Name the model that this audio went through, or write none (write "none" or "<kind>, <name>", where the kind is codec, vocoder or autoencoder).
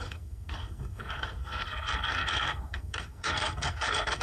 codec, SNAC